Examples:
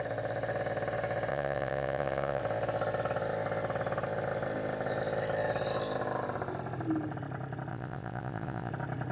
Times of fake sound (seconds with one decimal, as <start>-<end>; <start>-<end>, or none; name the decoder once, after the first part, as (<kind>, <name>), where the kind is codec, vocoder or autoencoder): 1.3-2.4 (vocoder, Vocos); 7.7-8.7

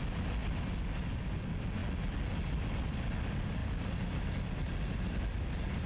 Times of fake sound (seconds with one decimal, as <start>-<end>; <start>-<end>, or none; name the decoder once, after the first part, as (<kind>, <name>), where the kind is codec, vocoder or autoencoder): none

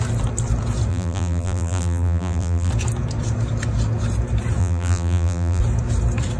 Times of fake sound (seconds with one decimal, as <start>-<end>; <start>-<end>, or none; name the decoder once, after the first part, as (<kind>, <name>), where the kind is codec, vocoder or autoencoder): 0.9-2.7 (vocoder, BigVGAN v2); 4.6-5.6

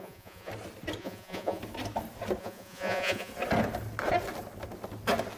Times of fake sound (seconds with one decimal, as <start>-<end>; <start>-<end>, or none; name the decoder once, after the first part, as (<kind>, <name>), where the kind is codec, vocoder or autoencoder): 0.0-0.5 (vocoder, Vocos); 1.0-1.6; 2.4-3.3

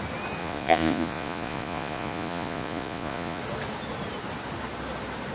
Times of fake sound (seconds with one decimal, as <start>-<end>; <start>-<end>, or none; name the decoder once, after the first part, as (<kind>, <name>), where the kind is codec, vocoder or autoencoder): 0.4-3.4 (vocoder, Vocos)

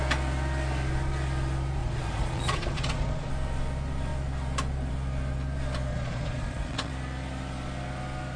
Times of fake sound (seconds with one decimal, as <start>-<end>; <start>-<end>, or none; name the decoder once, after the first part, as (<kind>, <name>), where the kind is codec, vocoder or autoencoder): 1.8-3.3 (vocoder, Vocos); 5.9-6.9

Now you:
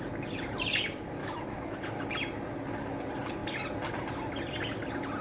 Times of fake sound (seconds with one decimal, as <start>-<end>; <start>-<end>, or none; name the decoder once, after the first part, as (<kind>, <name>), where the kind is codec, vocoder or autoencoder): 1.2-1.8 (autoencoder, DAC-VAE)

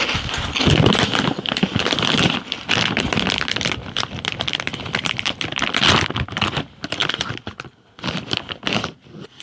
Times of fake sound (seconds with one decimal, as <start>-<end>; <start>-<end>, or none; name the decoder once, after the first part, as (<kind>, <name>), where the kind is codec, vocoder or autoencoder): none